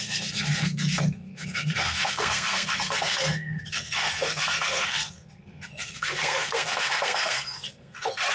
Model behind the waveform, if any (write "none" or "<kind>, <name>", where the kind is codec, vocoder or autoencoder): codec, SNAC